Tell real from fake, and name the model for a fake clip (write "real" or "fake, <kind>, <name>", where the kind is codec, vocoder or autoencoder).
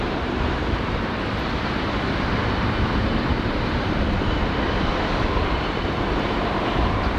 fake, vocoder, BigVGAN v2